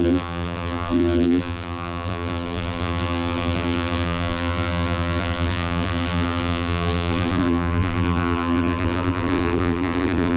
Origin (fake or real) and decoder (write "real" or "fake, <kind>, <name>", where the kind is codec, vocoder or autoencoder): fake, vocoder, BigVGAN v2